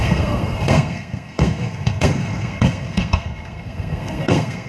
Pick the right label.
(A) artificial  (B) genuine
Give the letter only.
A